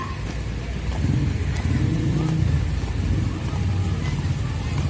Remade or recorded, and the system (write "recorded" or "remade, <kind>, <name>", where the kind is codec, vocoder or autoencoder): recorded